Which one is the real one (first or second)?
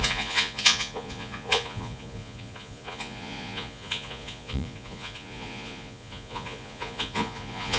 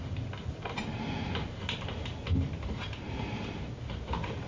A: second